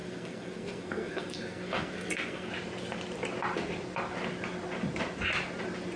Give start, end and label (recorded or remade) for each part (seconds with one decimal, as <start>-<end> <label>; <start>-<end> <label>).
0.0-2.5 remade; 2.5-6.0 recorded